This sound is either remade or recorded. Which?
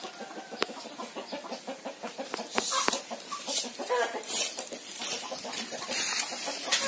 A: recorded